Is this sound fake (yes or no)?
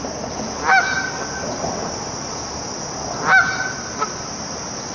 no